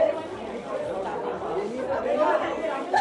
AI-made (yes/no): no